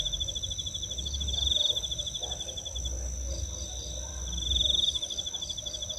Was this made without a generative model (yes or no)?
yes